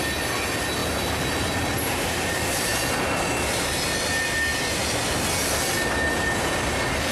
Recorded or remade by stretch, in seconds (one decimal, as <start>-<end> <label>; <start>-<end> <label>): 0.0-0.8 recorded; 0.8-3.3 remade; 3.3-7.1 recorded